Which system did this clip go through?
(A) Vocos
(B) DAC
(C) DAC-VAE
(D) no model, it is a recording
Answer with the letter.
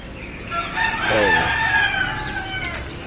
D